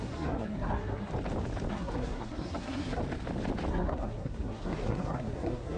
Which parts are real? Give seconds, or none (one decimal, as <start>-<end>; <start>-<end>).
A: 1.1-1.7; 3.0-3.7